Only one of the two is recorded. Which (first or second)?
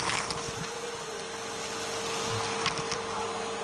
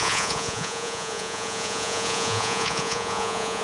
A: first